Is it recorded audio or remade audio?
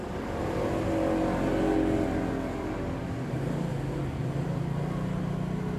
recorded